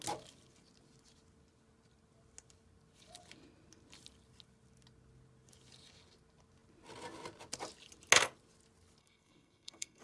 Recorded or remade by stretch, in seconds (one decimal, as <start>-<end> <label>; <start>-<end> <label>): 0.0-9.0 recorded; 9.0-10.0 remade